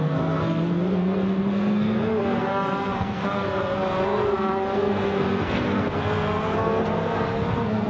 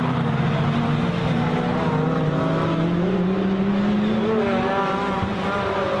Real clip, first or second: second